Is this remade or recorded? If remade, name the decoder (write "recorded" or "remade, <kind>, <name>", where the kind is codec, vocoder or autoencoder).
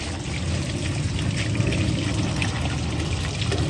recorded